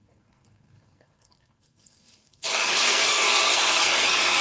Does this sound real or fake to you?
fake